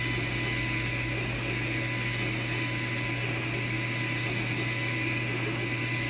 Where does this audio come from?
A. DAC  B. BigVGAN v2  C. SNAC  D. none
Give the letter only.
D